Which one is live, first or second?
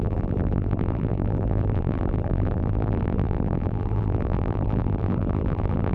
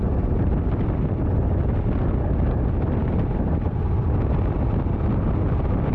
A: second